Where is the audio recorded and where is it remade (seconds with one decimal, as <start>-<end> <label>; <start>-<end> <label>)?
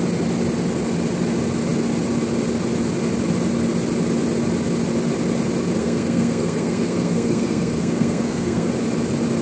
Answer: 0.0-5.8 recorded; 5.8-8.7 remade; 8.7-9.4 recorded